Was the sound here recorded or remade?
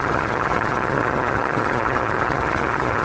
remade